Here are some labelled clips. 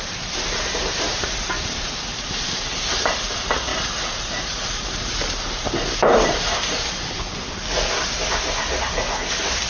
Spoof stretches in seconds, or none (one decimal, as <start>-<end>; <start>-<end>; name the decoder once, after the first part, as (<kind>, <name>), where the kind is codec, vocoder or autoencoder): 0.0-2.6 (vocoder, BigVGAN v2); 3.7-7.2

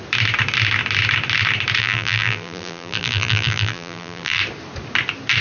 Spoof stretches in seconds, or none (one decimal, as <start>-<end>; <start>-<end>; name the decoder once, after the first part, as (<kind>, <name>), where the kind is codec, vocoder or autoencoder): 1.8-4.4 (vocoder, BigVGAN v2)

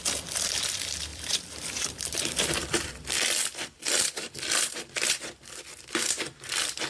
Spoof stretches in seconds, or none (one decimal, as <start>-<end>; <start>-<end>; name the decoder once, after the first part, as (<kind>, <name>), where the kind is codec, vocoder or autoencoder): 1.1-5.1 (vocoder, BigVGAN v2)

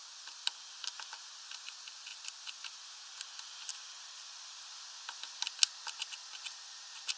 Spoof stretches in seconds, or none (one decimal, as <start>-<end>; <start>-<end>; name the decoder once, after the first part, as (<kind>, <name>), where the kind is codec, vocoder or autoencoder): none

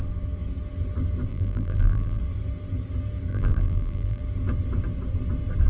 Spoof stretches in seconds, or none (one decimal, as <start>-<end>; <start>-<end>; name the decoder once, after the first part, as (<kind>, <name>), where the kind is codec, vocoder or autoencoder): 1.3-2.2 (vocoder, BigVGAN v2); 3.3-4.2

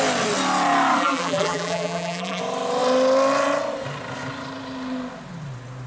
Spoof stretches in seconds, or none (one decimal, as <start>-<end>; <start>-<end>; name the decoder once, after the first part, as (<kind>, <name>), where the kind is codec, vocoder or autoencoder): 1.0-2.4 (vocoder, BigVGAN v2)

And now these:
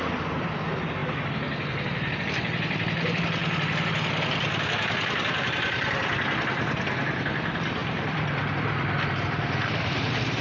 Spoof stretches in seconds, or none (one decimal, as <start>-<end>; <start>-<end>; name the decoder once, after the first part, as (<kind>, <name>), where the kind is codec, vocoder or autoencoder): 0.0-1.0 (vocoder, BigVGAN v2); 2.2-3.4; 6.0-10.4